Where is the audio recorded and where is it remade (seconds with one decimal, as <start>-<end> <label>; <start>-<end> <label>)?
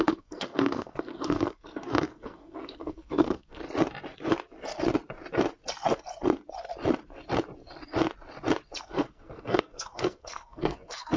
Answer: 0.0-3.6 remade; 3.6-8.8 recorded; 8.8-11.2 remade